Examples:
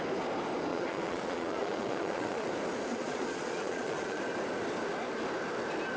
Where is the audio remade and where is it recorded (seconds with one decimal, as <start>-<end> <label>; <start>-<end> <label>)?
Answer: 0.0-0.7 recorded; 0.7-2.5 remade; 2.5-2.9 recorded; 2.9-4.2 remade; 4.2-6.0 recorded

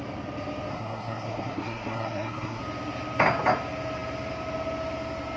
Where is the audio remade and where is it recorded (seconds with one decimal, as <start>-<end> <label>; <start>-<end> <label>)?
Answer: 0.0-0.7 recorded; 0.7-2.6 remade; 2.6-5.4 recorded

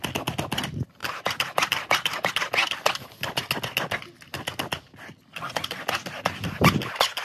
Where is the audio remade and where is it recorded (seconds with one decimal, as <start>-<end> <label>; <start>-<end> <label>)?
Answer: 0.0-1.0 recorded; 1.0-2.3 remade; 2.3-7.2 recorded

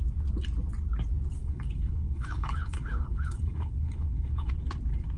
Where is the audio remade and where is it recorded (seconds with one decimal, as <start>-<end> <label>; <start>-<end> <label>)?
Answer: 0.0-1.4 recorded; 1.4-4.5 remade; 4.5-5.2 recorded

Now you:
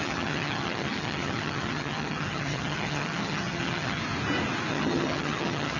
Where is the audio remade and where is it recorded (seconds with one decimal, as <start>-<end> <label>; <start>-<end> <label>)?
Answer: 0.0-4.0 remade; 4.0-4.7 recorded; 4.7-5.8 remade

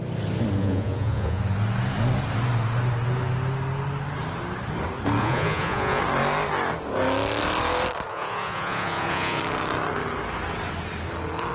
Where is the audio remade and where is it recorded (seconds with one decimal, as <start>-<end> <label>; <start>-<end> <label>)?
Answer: 0.0-0.6 recorded; 0.6-1.4 remade; 1.4-5.2 recorded; 5.2-6.0 remade; 6.0-8.1 recorded; 8.1-9.4 remade; 9.4-11.5 recorded

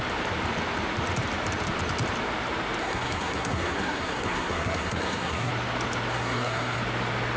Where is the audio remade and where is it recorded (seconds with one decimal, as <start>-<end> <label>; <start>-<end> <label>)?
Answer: 0.0-2.8 recorded; 2.8-5.5 remade; 5.5-6.1 recorded; 6.1-6.8 remade; 6.8-7.4 recorded